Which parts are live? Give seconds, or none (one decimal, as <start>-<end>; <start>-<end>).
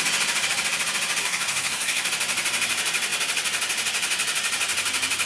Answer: 0.0-1.2; 2.1-5.3